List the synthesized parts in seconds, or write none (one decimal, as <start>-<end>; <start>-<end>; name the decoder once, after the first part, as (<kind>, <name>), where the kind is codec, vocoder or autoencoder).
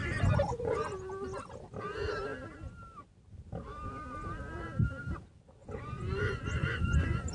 0.0-0.9 (vocoder, Vocos); 5.6-7.3